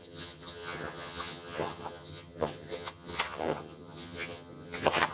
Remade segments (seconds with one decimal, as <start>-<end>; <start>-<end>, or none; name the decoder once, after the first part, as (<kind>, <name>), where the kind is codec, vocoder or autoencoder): 0.0-5.1 (vocoder, HiFi-GAN)